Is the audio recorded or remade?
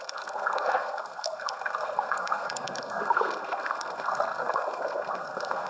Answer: remade